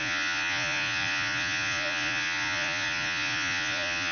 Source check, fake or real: fake